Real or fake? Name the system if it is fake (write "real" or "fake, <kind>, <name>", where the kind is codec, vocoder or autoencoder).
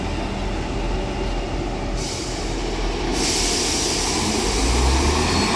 real